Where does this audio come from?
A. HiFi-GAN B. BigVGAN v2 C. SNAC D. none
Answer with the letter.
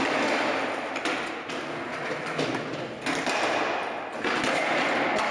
D